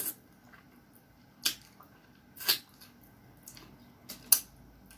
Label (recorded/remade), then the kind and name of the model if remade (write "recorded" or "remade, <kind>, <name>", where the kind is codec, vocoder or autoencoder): recorded